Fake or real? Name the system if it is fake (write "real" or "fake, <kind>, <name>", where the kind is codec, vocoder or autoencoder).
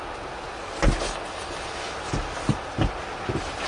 real